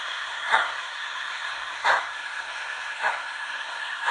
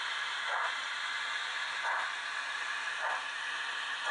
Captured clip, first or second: second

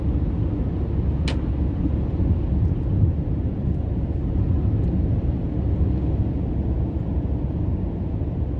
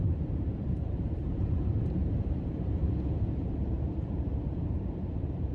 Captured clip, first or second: first